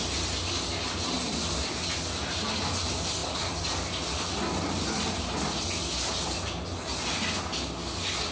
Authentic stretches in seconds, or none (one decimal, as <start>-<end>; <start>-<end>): 0.0-3.2; 5.8-8.3